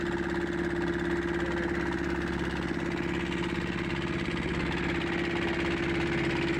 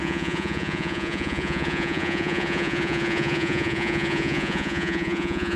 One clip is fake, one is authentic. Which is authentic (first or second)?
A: first